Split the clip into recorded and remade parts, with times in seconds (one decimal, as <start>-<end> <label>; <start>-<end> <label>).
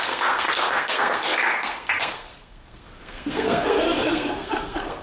0.0-5.0 remade